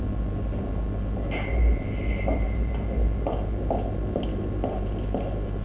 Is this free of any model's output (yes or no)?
yes